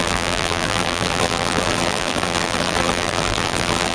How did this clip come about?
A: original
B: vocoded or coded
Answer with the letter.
B